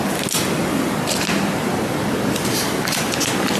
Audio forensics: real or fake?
real